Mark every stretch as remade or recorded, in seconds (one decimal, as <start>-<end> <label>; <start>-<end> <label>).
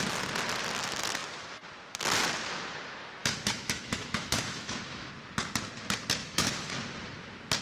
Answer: 0.0-3.2 recorded; 3.2-5.1 remade; 5.1-6.2 recorded; 6.2-6.7 remade; 6.7-7.6 recorded